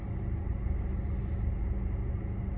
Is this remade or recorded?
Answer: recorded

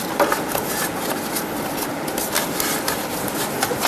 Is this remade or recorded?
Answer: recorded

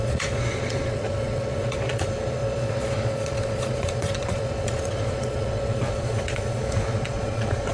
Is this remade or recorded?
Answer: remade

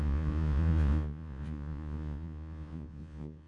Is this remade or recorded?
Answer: remade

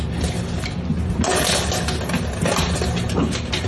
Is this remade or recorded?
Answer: recorded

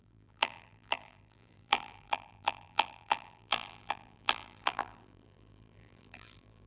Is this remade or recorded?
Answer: remade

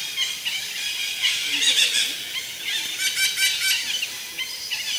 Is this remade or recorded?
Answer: recorded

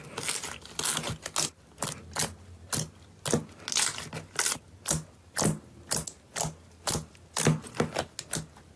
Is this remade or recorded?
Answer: recorded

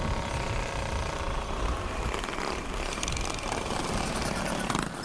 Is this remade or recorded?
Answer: recorded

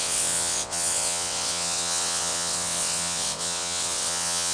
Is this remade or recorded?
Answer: remade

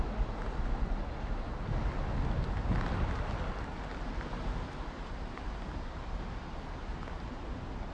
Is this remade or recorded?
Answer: recorded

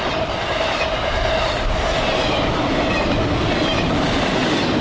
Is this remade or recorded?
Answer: recorded